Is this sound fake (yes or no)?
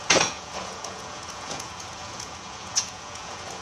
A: yes